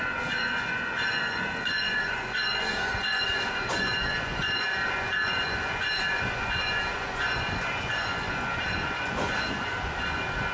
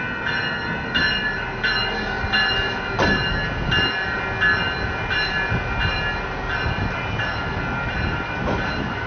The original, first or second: second